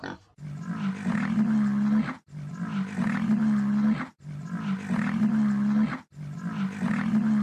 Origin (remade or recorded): recorded